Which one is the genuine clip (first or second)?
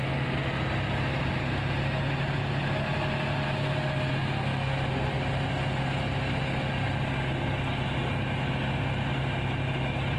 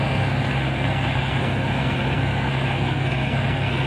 first